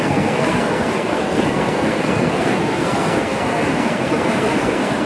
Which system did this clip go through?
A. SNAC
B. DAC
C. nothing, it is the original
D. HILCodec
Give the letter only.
A